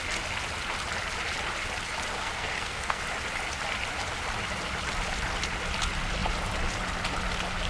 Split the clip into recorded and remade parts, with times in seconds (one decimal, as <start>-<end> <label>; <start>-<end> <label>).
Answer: 0.0-2.1 recorded; 2.1-3.0 remade; 3.0-7.7 recorded